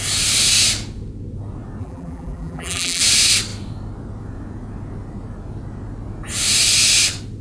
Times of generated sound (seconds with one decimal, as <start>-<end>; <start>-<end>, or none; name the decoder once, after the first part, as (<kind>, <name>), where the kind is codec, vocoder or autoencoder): 1.8-3.0 (vocoder, BigVGAN v2)